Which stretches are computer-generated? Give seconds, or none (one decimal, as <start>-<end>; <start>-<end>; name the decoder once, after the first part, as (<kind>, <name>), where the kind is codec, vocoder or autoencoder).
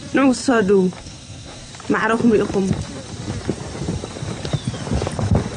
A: 1.0-1.7 (codec, SNAC)